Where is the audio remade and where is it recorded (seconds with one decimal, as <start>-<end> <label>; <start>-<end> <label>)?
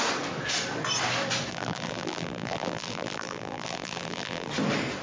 0.0-1.5 recorded; 1.5-4.5 remade; 4.5-5.0 recorded